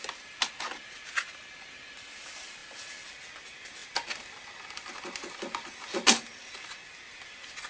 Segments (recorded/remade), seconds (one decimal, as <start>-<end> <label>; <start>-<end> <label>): 0.0-7.7 recorded

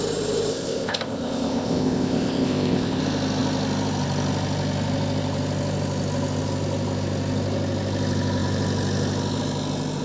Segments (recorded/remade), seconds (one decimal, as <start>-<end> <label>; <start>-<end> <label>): 0.0-0.5 recorded; 0.5-3.0 remade; 3.0-10.0 recorded

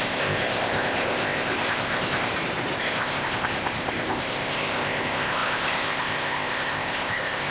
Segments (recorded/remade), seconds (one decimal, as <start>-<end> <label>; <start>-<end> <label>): 0.0-2.3 remade; 2.3-2.8 recorded; 2.8-7.5 remade

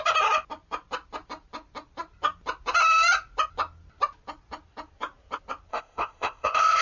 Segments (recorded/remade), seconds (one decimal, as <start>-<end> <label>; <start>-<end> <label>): 0.0-5.7 recorded; 5.7-6.8 remade

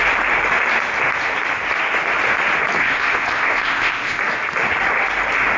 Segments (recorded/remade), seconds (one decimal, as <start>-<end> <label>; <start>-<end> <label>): 0.0-2.8 recorded; 2.8-4.2 remade; 4.2-5.6 recorded

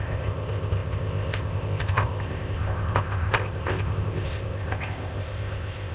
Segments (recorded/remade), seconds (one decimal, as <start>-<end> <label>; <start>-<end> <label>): 0.0-5.9 remade